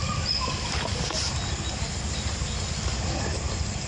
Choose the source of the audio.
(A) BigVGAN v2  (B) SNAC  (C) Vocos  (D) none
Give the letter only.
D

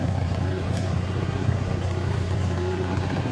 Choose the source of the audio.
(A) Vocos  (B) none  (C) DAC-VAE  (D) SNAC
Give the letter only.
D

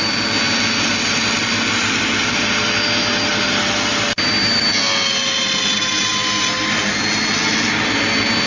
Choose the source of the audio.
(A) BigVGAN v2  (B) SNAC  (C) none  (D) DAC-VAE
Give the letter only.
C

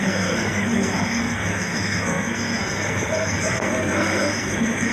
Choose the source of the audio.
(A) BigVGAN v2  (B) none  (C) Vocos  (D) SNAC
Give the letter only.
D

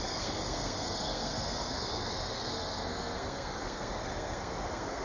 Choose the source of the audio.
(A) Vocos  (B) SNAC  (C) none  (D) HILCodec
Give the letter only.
B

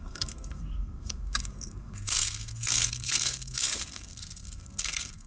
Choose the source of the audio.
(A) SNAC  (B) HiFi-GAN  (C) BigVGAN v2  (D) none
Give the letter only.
A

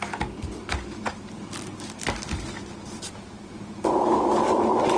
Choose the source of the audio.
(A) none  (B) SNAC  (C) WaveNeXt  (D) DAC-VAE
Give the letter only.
A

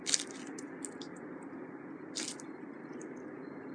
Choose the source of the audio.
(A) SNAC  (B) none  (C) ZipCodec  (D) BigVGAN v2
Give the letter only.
B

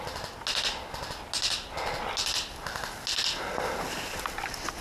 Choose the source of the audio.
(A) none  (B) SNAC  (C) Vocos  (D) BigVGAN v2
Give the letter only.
A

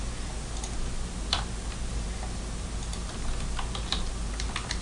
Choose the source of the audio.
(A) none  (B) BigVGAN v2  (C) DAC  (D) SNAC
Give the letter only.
A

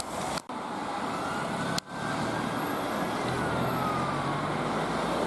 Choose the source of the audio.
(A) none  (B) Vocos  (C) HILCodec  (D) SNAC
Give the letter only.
A